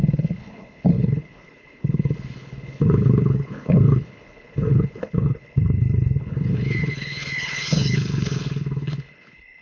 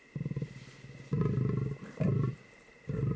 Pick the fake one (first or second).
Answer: first